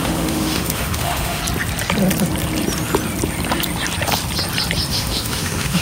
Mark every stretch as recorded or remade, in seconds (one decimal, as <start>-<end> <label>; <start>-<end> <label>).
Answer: 0.0-1.4 remade; 1.4-4.9 recorded; 4.9-5.8 remade